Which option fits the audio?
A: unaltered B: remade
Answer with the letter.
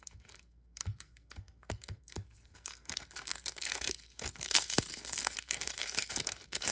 B